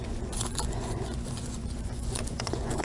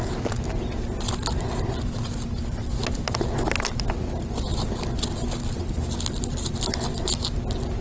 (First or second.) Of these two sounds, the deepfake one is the first